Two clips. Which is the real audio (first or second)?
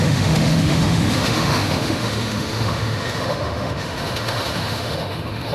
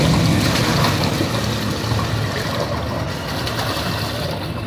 second